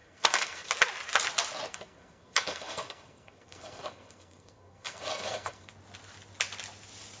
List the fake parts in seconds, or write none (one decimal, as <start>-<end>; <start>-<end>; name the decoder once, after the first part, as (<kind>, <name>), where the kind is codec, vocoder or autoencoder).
0.0-0.7 (codec, SNAC); 1.7-5.7